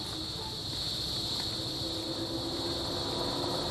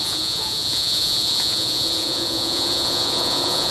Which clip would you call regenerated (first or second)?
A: second